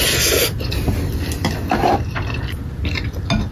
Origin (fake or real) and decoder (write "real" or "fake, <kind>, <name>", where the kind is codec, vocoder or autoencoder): real